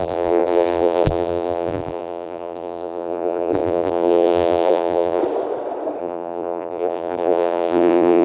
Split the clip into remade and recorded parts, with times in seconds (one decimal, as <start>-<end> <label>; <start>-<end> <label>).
0.0-5.2 remade; 5.2-6.0 recorded; 6.0-8.2 remade